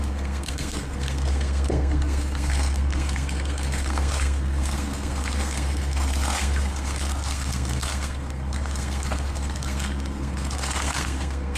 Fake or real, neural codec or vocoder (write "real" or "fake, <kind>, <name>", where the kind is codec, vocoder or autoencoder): fake, codec, SNAC